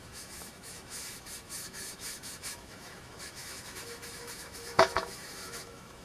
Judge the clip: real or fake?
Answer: fake